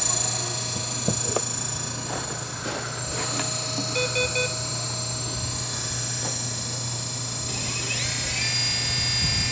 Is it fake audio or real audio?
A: real